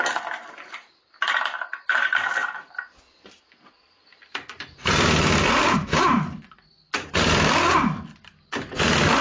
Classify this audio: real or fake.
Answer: real